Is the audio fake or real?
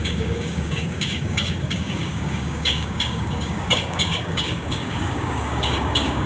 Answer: fake